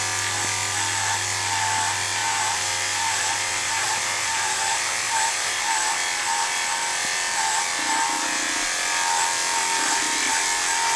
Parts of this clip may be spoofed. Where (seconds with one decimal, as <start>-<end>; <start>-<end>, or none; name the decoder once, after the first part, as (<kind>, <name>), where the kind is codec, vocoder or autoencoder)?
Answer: 2.2-5.7 (vocoder, BigVGAN v2)